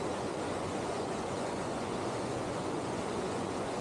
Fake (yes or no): yes